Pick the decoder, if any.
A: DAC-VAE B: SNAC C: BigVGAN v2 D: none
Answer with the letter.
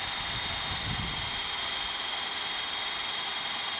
D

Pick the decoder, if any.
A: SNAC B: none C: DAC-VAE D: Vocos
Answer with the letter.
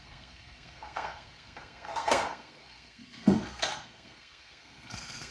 A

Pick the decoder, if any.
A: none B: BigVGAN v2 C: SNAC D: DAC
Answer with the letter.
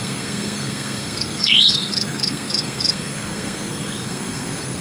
C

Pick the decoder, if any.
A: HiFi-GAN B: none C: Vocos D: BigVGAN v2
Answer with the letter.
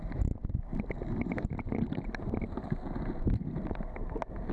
B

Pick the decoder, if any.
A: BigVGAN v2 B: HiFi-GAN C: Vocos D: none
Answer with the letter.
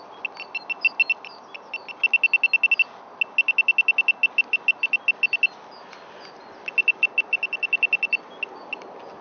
D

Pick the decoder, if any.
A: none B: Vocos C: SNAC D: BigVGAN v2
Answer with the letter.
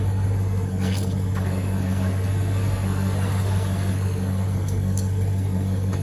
C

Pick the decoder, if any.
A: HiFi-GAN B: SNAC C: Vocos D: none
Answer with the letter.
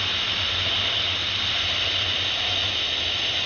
D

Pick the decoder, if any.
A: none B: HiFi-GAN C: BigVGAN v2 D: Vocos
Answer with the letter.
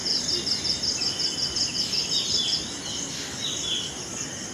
A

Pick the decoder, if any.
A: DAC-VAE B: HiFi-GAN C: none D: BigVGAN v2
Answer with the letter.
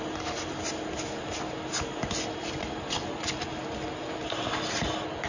C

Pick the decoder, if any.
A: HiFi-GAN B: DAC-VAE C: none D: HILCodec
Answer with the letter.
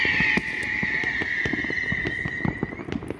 C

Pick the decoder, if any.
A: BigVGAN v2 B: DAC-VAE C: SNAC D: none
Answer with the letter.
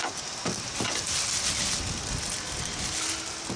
D